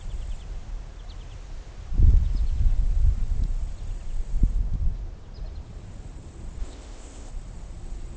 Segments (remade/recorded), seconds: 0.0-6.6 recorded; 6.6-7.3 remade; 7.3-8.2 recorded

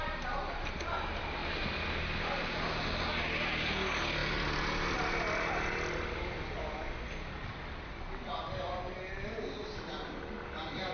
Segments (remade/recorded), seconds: 0.0-10.9 recorded

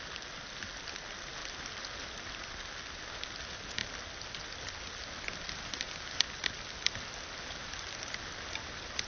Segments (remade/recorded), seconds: 0.0-9.1 recorded

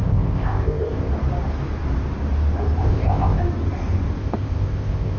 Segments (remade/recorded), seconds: 0.0-1.1 remade; 1.1-2.8 recorded; 2.8-3.4 remade; 3.4-4.2 recorded; 4.2-5.2 remade